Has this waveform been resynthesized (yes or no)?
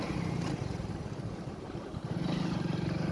yes